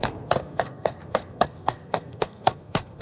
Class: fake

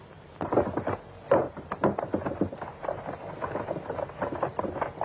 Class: real